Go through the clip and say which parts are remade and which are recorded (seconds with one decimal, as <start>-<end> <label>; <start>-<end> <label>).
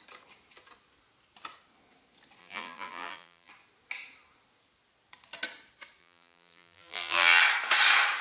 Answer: 0.0-2.4 recorded; 2.4-3.5 remade; 3.5-6.0 recorded; 6.0-7.4 remade; 7.4-8.2 recorded